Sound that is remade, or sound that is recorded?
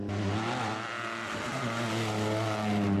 recorded